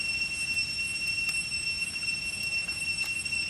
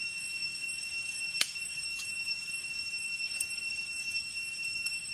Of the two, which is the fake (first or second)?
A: second